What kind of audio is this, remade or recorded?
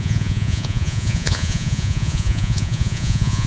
remade